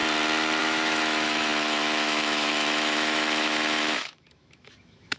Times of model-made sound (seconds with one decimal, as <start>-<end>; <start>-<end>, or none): 0.6-5.2